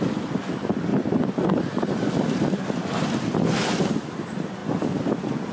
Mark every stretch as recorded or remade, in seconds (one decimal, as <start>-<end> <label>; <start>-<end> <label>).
0.0-4.6 remade; 4.6-5.5 recorded